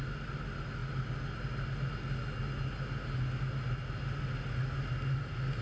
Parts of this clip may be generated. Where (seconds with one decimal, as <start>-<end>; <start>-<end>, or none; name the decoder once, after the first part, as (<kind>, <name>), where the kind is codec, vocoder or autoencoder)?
none